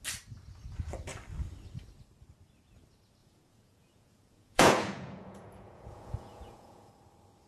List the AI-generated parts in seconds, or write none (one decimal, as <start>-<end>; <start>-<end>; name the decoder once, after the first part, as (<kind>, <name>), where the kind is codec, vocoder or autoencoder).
3.2-6.9 (vocoder, Vocos)